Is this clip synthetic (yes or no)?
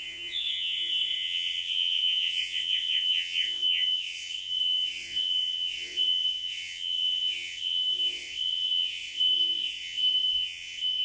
yes